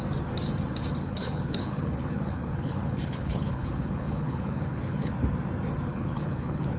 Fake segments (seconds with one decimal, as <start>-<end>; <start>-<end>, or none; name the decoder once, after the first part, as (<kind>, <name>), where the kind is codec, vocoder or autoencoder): 1.0-5.1 (codec, HILCodec); 5.9-6.8